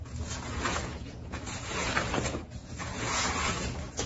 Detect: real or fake fake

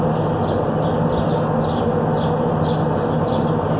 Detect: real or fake real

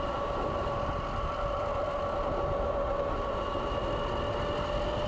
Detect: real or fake real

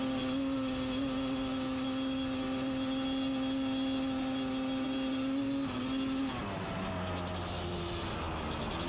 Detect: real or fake real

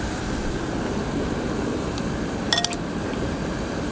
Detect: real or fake real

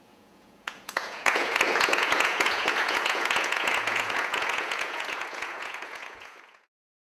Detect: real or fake fake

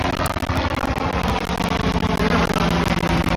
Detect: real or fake real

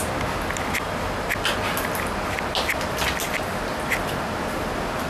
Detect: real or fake real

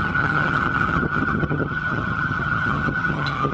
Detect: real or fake fake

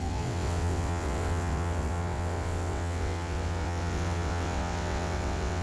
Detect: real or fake fake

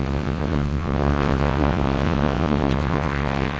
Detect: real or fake fake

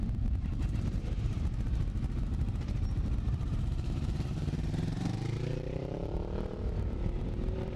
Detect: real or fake fake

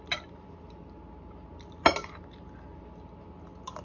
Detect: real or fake real